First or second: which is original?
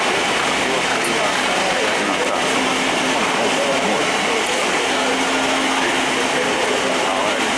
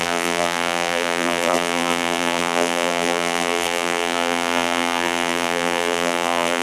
first